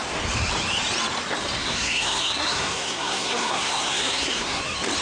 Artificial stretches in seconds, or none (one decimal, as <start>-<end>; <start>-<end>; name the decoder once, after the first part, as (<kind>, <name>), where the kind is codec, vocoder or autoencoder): 1.6-4.6 (codec, SNAC)